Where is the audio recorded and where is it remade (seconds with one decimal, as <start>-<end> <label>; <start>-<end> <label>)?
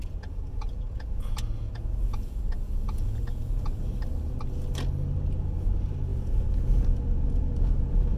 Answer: 0.0-3.8 remade; 3.8-6.1 recorded; 6.1-8.2 remade